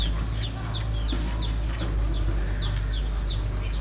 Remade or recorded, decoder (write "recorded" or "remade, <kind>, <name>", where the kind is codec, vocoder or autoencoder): recorded